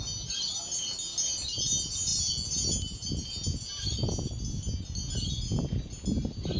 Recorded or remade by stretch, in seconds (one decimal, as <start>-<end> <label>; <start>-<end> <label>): 0.0-6.6 recorded